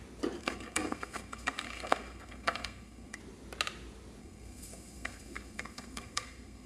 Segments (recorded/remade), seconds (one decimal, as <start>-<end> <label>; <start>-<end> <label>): 0.0-0.4 recorded; 0.4-3.2 remade; 3.2-4.2 recorded; 4.2-6.7 remade